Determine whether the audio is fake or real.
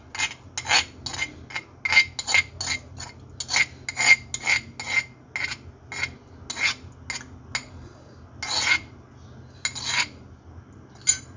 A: real